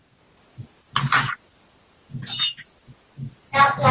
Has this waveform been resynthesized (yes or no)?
no